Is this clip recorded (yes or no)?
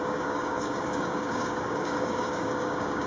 no